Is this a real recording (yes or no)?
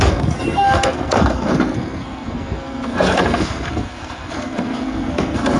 no